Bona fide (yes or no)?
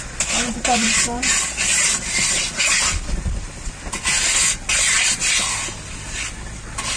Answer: yes